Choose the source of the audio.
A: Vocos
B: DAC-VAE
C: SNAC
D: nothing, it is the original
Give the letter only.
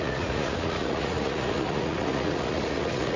A